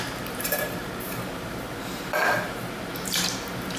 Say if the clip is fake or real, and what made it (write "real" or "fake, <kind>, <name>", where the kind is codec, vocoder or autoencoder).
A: fake, vocoder, BigVGAN v2